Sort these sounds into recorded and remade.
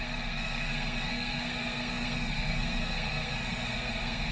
remade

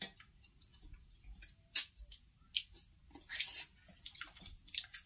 recorded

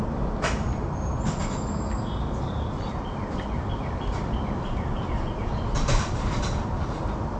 remade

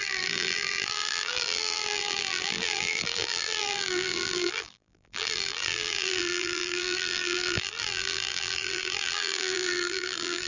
remade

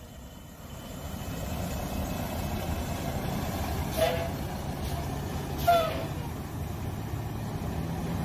recorded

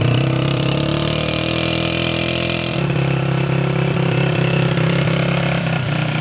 remade